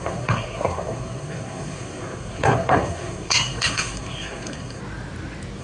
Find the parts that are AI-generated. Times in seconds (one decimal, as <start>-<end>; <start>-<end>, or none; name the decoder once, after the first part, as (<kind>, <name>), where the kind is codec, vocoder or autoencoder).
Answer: 0.0-4.8 (codec, SNAC)